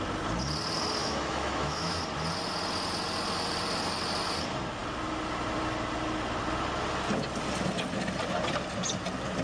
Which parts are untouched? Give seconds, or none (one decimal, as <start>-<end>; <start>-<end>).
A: 0.0-1.0; 2.0-9.4